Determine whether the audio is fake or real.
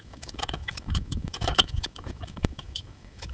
fake